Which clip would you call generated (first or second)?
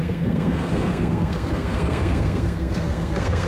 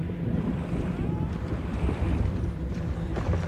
first